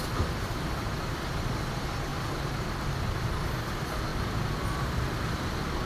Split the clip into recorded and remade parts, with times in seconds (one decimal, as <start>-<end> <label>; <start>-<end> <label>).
0.0-2.1 remade; 2.1-2.8 recorded; 2.8-4.1 remade; 4.1-4.8 recorded; 4.8-5.9 remade